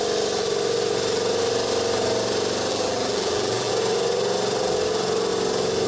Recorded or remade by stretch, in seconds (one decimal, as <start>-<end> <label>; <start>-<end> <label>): 0.0-2.7 recorded; 2.7-3.7 remade; 3.7-5.9 recorded